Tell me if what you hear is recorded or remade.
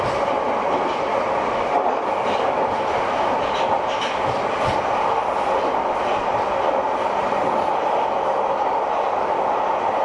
recorded